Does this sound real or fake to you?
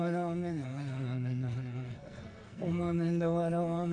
fake